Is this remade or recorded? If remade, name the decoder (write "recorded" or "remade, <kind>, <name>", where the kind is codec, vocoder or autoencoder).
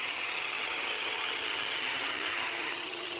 remade, vocoder, HiFi-GAN